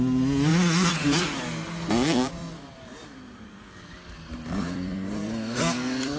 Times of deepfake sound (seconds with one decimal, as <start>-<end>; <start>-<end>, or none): 0.5-1.4; 2.4-6.2